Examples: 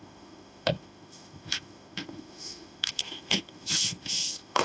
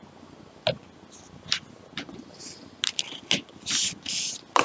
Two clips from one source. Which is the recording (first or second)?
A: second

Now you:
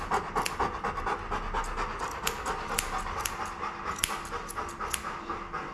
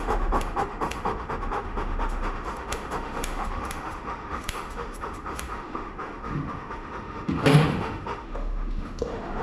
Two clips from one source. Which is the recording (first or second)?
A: first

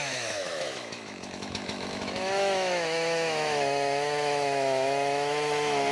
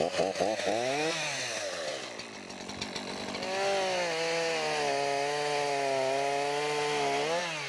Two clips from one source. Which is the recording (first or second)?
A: second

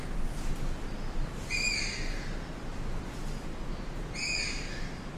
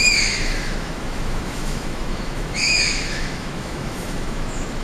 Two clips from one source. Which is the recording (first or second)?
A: first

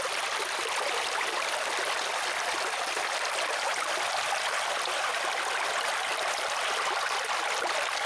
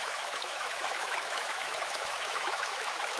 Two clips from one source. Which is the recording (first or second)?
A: first